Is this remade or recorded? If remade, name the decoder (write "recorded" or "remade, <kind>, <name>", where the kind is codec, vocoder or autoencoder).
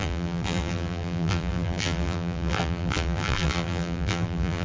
remade, vocoder, BigVGAN v2